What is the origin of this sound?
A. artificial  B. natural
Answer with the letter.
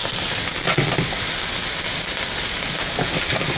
B